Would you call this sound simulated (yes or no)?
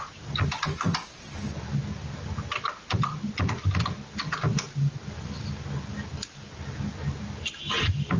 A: no